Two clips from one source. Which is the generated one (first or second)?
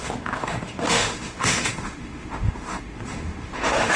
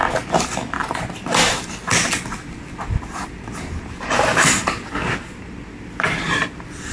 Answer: first